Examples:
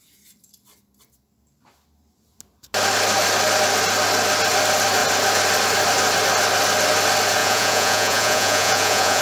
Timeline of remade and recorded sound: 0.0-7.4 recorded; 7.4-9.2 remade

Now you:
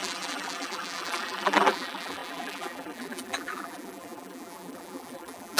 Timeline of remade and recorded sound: 0.0-5.6 remade

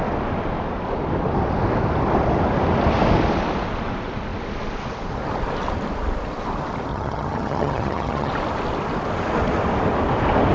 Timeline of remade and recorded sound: 0.0-6.9 recorded; 6.9-8.3 remade; 8.3-10.5 recorded

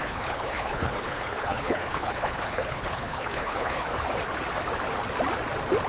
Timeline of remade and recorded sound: 0.0-3.9 remade; 3.9-5.9 recorded

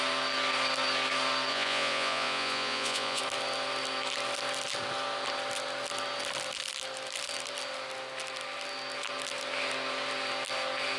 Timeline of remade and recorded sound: 0.0-1.5 recorded; 1.5-3.2 remade; 3.2-11.0 recorded

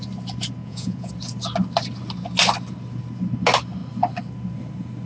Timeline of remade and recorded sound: 0.0-0.6 recorded; 0.6-1.1 remade; 1.1-5.1 recorded

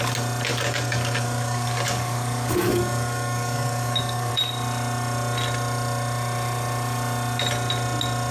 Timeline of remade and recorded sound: 0.0-0.5 recorded; 0.5-4.3 remade; 4.3-8.3 recorded

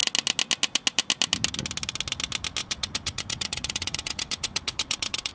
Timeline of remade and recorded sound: 0.0-2.6 recorded; 2.6-5.3 remade